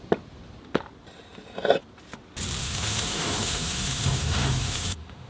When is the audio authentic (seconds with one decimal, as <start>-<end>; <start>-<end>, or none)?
0.0-2.6